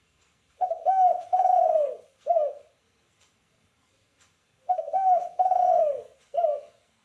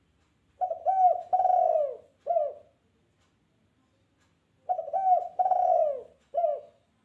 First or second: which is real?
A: second